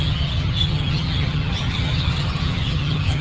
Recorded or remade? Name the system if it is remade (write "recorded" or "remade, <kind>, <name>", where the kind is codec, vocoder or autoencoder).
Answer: remade, vocoder, HiFi-GAN